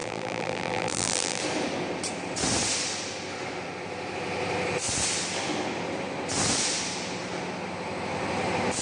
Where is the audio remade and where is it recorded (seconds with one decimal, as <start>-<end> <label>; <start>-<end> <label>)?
0.0-1.4 remade; 1.4-8.8 recorded